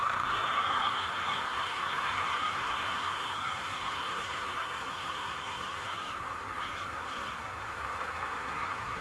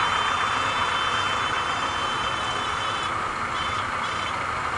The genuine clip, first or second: second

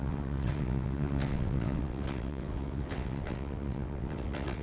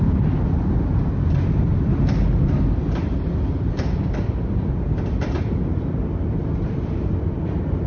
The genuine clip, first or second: second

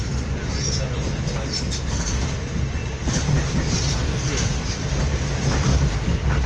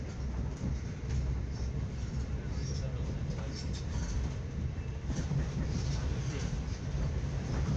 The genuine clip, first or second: first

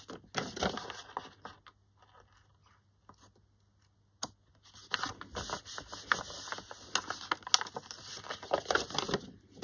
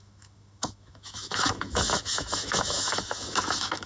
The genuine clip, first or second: first